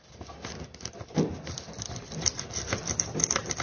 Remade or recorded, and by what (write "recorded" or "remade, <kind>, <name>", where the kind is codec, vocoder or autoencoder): recorded